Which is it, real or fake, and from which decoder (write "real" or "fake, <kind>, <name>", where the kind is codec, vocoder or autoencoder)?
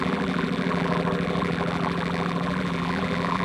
fake, vocoder, BigVGAN v2